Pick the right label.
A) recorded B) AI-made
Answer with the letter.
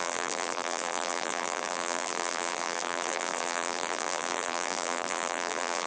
B